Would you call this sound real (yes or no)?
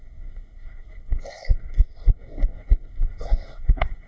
no